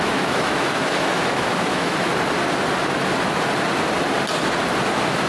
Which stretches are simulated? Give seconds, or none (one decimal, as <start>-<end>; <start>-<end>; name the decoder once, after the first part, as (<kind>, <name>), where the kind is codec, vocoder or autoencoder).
0.0-2.1 (autoencoder, DAC-VAE)